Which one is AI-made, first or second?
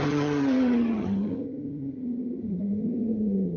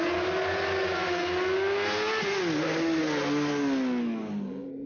first